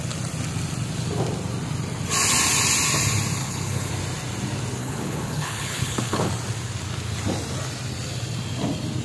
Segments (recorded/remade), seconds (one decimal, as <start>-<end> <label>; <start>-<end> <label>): 0.0-3.4 recorded; 3.4-3.9 remade; 3.9-4.8 recorded; 4.8-6.3 remade; 6.3-9.0 recorded